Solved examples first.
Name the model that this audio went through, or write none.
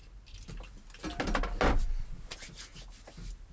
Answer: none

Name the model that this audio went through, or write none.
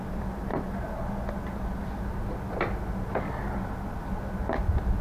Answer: none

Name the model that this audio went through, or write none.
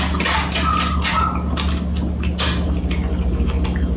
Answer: none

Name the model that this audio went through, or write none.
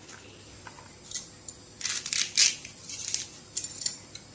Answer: none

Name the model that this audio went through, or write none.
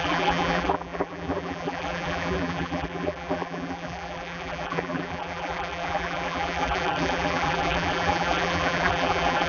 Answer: vocoder, BigVGAN v2